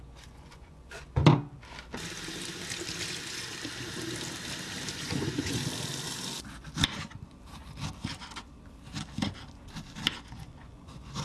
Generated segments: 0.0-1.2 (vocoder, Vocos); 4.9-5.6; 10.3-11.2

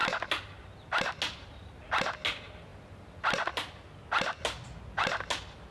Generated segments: none

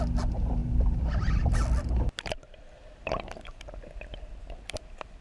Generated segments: none

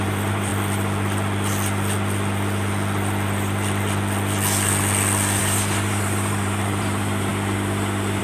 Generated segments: 0.0-0.5 (vocoder, BigVGAN v2); 5.4-7.3

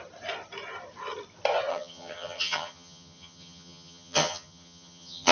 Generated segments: 1.7-5.3 (vocoder, HiFi-GAN)

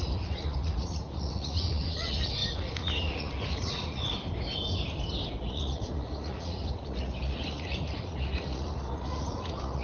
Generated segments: 0.0-4.1 (vocoder, Vocos); 5.4-9.8

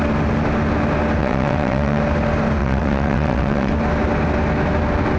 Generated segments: 1.2-2.0 (vocoder, WaveNeXt); 2.6-3.7